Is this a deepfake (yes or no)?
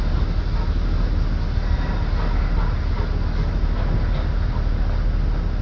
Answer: no